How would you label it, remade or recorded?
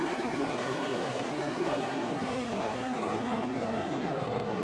remade